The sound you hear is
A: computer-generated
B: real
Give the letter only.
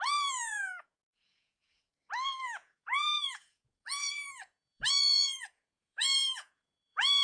A